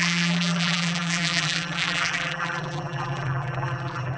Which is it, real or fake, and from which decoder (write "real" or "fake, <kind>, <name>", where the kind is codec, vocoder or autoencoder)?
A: fake, vocoder, BigVGAN v2